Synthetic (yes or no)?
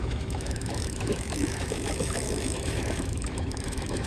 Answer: yes